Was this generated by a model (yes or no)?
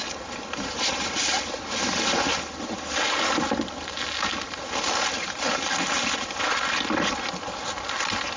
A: no